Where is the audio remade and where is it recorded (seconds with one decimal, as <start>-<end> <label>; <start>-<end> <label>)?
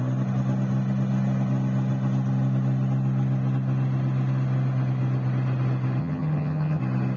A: 0.0-6.0 recorded; 6.0-6.8 remade; 6.8-7.2 recorded